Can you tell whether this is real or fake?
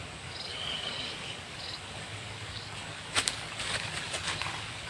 fake